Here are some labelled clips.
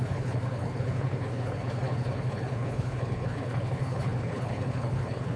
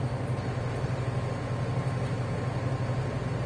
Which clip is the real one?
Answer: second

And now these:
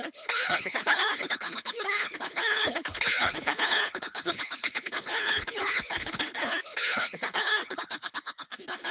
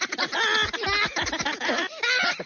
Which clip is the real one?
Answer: second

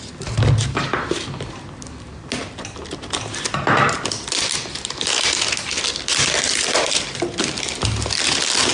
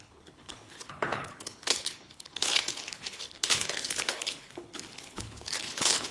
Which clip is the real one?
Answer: first